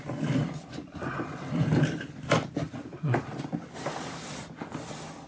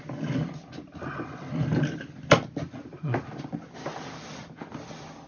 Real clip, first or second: second